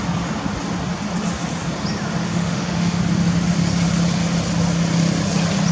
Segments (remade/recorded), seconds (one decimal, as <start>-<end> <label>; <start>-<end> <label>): 0.0-2.2 recorded; 2.2-3.0 remade; 3.0-5.7 recorded